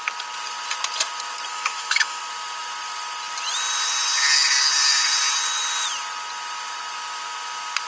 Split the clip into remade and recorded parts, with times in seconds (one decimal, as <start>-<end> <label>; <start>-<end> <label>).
0.0-1.5 recorded; 1.5-2.2 remade; 2.2-7.9 recorded